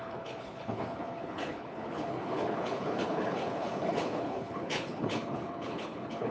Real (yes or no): no